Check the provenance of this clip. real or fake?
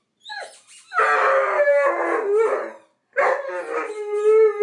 real